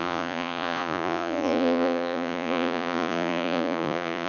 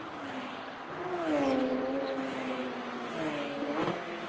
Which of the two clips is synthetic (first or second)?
first